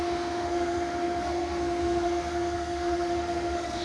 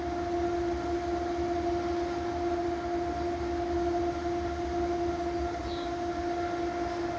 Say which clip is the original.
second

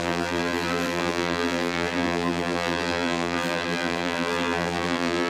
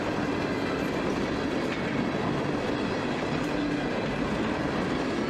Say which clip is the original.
second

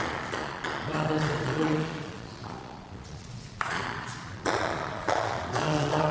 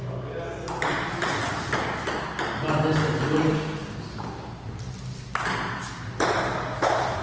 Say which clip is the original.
second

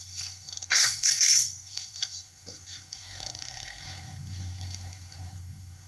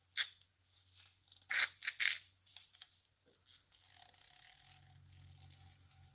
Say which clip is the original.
second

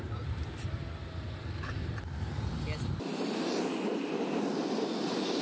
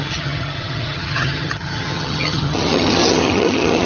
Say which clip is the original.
first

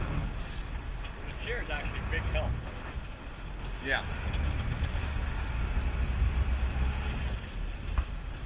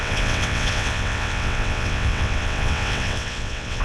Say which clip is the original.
first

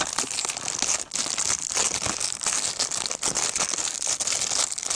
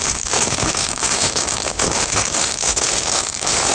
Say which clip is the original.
first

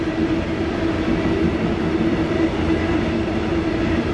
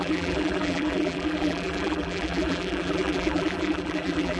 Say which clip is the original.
first